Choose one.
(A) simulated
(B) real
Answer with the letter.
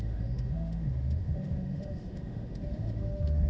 A